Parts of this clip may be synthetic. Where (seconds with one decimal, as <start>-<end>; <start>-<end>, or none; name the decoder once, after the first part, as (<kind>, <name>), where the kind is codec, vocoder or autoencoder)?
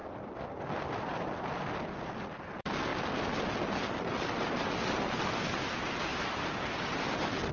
none